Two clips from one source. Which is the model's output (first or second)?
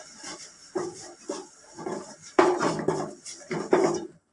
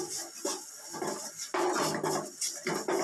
first